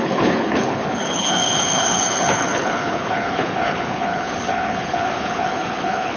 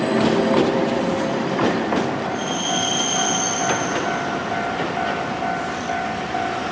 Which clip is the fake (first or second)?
first